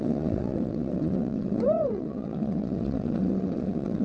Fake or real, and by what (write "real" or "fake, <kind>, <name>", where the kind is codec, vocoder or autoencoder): fake, vocoder, WaveNeXt